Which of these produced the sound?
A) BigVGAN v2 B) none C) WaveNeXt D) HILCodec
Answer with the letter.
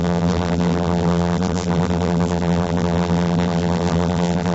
A